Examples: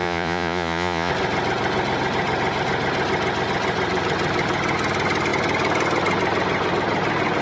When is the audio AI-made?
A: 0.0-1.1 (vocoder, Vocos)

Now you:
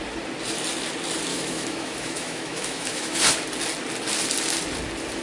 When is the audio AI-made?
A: 1.3-3.2 (autoencoder, DAC-VAE)

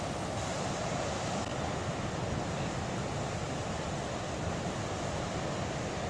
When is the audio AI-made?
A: none